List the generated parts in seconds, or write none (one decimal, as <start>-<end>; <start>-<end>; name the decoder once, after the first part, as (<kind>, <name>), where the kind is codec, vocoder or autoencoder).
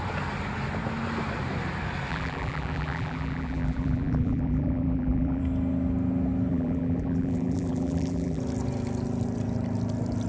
2.1-5.4 (vocoder, BigVGAN v2); 6.5-8.4